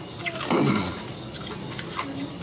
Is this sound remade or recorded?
recorded